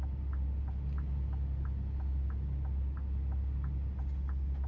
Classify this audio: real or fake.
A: real